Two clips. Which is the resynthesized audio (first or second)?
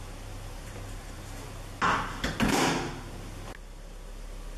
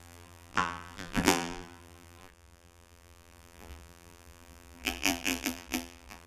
second